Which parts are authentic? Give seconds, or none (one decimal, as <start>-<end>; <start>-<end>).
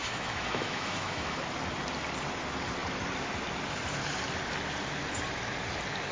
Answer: 1.4-6.1